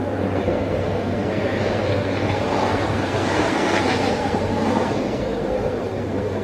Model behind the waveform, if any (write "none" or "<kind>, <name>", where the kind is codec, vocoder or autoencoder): codec, SNAC